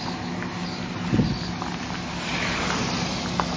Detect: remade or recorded recorded